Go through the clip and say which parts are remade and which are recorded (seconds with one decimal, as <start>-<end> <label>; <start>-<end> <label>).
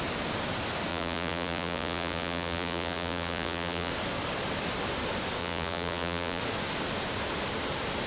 0.0-0.9 recorded; 0.9-3.9 remade; 3.9-5.4 recorded; 5.4-6.4 remade; 6.4-8.1 recorded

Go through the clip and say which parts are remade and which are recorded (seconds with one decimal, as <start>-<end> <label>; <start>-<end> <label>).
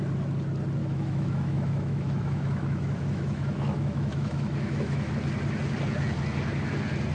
0.0-0.8 recorded; 0.8-5.1 remade; 5.1-7.1 recorded